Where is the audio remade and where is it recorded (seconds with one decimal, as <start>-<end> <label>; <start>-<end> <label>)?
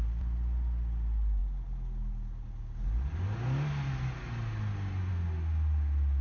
0.0-6.2 recorded